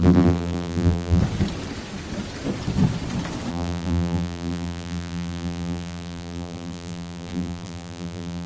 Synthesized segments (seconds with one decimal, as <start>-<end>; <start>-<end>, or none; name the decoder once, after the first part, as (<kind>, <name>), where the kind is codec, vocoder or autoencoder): 0.0-1.2 (vocoder, BigVGAN v2); 3.5-8.5